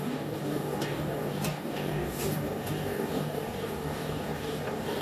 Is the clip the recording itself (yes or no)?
no